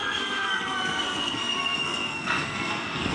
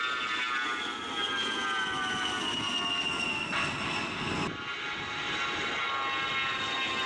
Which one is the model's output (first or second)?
first